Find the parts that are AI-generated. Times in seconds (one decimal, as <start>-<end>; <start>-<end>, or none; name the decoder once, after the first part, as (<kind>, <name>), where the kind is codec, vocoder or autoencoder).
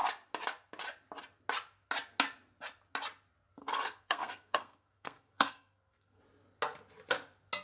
3.6-6.2 (codec, SNAC)